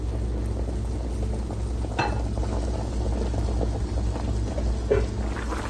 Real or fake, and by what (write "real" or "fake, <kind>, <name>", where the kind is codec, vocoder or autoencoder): real